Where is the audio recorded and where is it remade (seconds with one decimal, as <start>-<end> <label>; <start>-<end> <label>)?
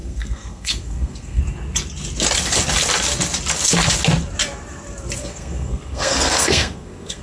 0.0-1.4 remade; 1.4-5.2 recorded; 5.2-7.2 remade